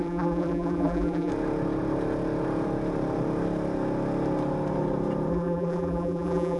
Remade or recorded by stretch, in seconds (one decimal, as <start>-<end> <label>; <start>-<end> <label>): 0.0-1.3 remade; 1.3-5.3 recorded; 5.3-6.6 remade